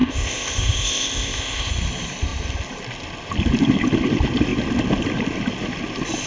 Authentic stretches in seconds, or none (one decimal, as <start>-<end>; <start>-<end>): 1.7-6.3